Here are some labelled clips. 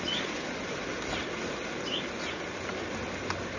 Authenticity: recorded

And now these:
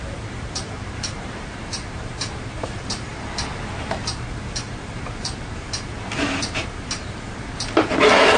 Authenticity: remade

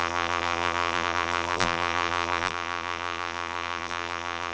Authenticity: remade